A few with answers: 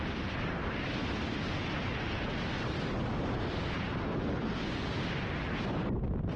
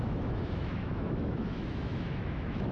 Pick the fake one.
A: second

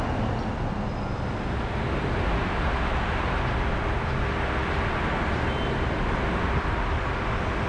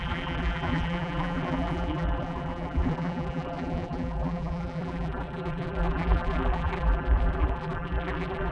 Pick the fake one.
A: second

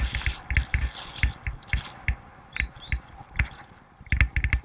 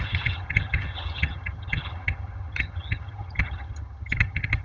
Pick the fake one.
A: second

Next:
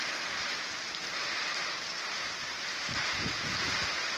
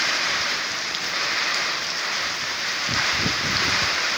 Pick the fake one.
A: second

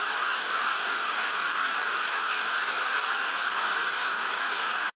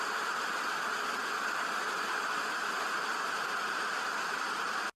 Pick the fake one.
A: first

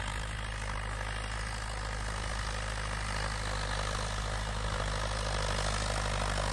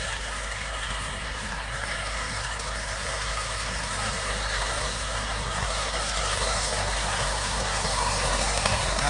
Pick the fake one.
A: second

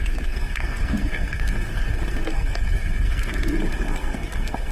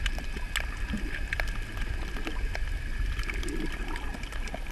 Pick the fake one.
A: first